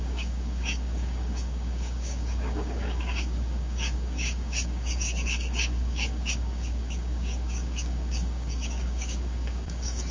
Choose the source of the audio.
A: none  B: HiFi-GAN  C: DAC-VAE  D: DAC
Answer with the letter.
D